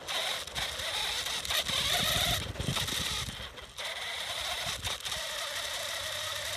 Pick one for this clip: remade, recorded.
recorded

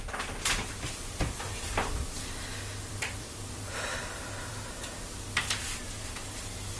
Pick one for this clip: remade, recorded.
remade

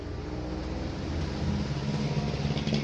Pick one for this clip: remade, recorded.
recorded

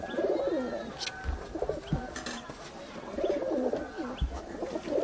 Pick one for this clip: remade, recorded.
recorded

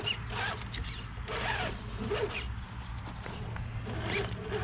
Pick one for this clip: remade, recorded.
recorded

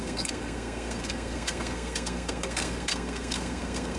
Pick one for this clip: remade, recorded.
remade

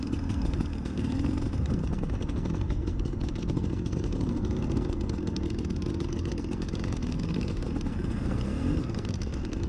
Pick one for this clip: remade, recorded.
remade